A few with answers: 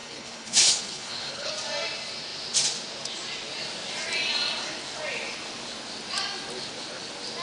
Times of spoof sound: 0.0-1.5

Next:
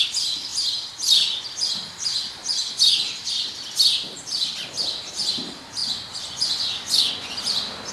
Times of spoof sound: 5.8-7.3

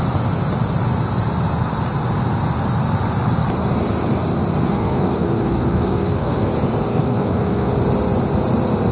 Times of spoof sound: 4.7-6.5; 6.9-7.7

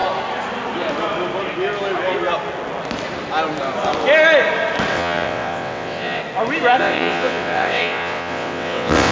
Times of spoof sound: 4.9-6.2; 6.8-9.1

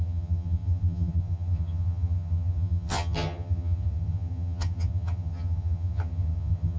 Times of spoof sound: 0.0-6.8

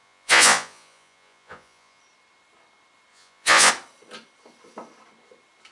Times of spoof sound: 0.0-2.0; 3.1-3.7

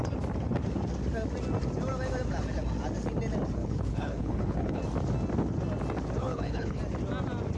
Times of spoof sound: 3.6-4.8; 6.2-6.8

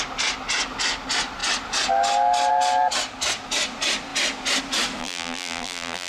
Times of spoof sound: 5.0-6.1